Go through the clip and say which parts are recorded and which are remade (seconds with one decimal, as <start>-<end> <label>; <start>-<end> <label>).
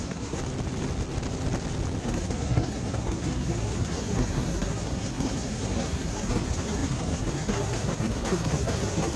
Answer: 0.0-0.4 remade; 0.4-2.0 recorded; 2.0-9.2 remade